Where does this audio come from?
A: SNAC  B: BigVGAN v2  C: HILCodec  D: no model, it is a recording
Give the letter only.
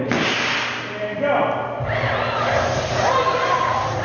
D